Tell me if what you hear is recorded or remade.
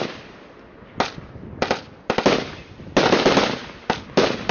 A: recorded